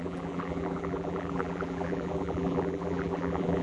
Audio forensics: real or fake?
fake